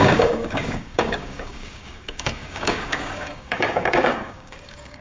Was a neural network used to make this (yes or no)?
yes